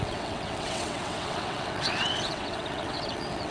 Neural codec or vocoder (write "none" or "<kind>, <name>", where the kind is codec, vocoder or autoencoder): vocoder, WaveNeXt